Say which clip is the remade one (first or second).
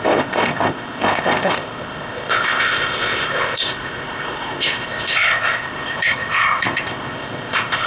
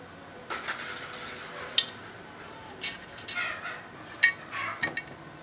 first